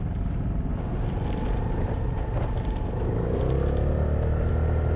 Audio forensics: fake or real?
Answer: real